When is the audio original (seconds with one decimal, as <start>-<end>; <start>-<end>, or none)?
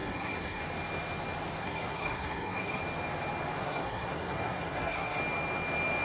0.6-1.6; 2.8-3.6; 5.2-6.0